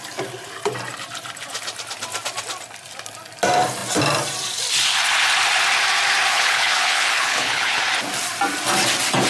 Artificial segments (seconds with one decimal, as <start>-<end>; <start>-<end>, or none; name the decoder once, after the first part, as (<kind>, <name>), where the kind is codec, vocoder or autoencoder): 6.3-7.8 (codec, HILCodec)